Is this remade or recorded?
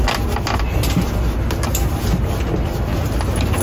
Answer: recorded